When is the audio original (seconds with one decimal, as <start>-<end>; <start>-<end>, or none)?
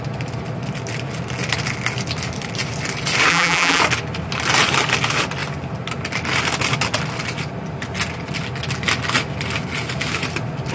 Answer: 0.0-3.3; 3.8-10.7